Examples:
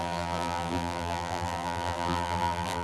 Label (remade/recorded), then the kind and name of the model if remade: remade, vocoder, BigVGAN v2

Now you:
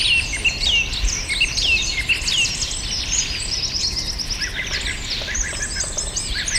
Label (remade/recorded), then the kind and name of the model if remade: recorded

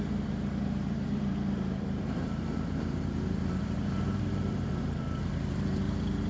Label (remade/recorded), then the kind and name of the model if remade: remade, vocoder, BigVGAN v2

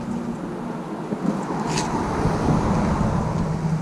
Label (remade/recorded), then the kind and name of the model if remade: recorded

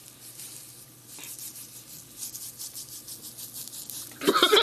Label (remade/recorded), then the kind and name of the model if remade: recorded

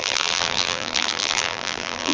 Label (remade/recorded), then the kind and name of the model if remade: remade, vocoder, BigVGAN v2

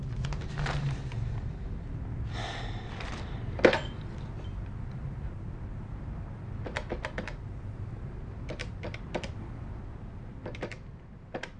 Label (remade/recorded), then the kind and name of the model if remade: remade, vocoder, BigVGAN v2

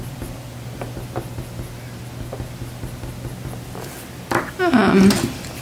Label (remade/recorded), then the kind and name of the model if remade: recorded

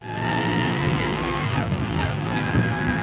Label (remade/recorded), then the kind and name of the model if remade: remade, vocoder, BigVGAN v2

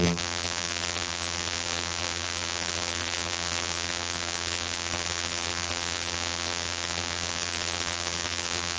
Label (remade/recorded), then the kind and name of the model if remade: remade, vocoder, BigVGAN v2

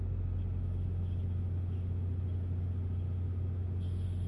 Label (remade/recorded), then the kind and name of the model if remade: recorded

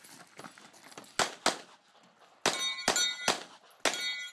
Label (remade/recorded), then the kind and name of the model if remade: recorded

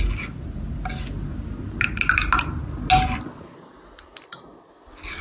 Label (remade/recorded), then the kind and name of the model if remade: recorded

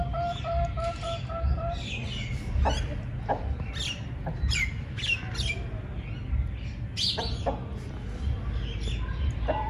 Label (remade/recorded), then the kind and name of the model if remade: recorded